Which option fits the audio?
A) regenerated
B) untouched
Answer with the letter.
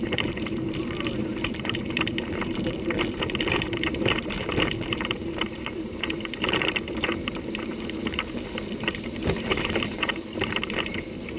A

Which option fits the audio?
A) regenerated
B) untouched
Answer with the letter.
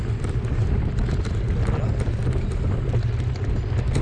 B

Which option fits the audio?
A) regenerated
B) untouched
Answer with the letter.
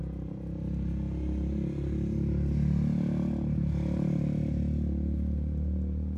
B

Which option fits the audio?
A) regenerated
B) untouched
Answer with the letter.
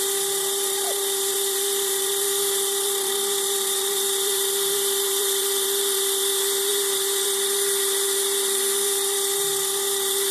A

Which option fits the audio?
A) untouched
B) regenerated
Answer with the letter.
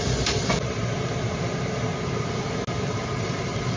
A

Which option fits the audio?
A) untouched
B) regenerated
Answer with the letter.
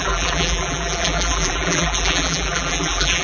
B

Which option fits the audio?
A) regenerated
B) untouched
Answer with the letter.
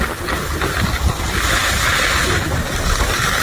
B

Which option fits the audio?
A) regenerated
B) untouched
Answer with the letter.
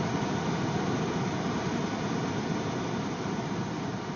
A